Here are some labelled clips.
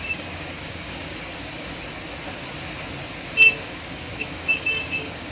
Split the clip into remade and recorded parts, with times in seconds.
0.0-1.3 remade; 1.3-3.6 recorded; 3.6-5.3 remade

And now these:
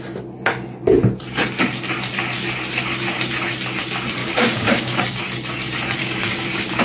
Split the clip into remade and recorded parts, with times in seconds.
0.0-4.2 recorded; 4.2-5.0 remade; 5.0-6.0 recorded; 6.0-6.8 remade

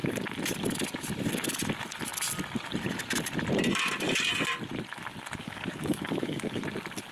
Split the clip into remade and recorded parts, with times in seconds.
0.0-5.4 recorded; 5.4-6.6 remade; 6.6-7.1 recorded

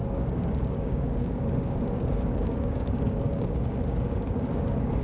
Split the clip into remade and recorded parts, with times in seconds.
0.0-5.0 remade

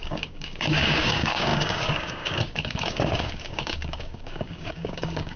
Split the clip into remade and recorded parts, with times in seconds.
0.0-5.4 remade

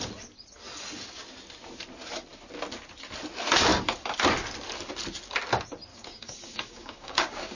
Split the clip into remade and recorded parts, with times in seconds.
0.0-5.9 recorded; 5.9-7.6 remade

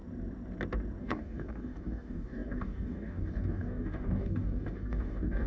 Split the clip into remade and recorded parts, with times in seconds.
0.0-1.0 recorded; 1.0-5.5 remade